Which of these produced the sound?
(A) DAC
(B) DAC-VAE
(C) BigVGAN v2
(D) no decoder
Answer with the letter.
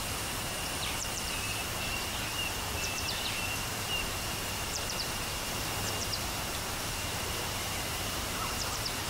C